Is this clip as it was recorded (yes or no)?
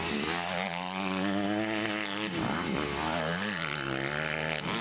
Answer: yes